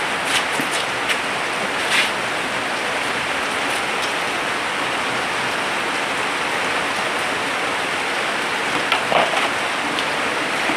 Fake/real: real